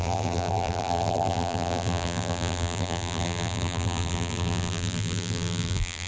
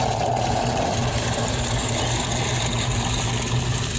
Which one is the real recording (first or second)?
second